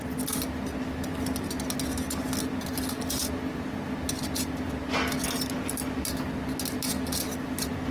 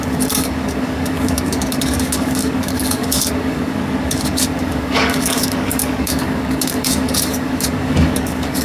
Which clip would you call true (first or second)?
first